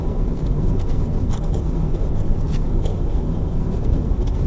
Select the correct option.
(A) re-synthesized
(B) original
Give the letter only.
A